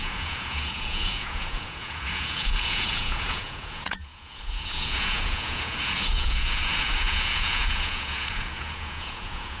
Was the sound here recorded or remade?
remade